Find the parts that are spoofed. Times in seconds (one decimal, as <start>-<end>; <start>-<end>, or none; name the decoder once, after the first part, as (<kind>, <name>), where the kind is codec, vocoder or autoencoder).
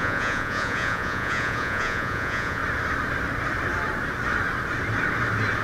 0.0-2.6 (vocoder, Vocos)